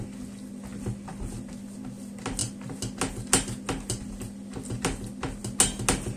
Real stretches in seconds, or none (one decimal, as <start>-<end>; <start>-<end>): 0.0-6.2